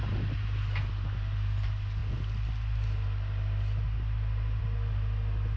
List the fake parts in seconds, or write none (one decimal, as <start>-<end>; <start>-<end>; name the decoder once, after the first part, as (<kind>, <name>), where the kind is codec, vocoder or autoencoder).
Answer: none